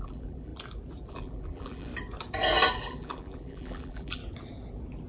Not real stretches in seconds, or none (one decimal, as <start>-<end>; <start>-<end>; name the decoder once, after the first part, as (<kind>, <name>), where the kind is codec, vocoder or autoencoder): 0.0-0.5 (vocoder, BigVGAN v2); 1.1-1.9; 2.8-4.2